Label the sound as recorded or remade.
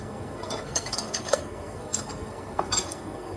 remade